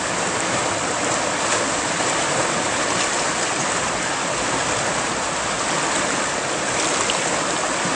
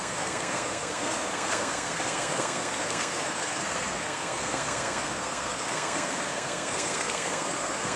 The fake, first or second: second